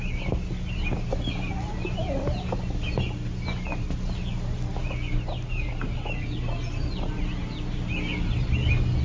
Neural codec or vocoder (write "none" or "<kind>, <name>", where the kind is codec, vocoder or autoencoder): none